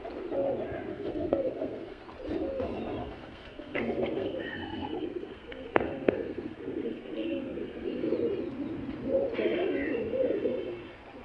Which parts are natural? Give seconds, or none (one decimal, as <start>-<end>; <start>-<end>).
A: 0.0-0.9; 2.0-3.0; 8.1-11.2